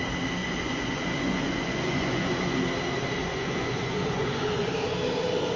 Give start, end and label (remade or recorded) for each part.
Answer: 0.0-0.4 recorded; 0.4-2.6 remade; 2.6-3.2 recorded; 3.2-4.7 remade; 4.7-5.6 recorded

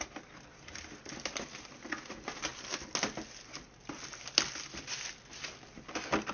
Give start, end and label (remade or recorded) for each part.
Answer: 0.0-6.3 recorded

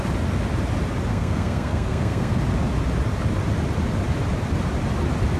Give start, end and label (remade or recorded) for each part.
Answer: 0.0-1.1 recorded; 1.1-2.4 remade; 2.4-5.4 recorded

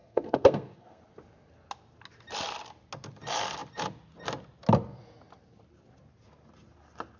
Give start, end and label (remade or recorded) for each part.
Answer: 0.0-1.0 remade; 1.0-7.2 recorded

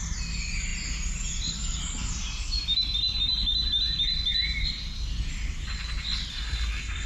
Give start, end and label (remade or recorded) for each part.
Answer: 0.0-6.3 recorded; 6.3-7.1 remade

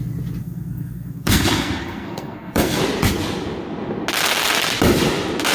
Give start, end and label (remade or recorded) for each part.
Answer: 0.0-0.4 recorded; 0.4-2.8 remade; 2.8-5.5 recorded